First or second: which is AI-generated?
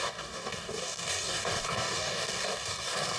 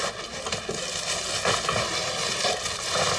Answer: first